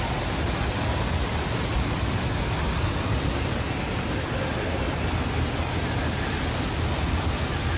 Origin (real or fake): real